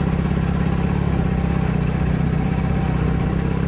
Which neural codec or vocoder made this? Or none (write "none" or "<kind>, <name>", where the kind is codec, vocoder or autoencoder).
none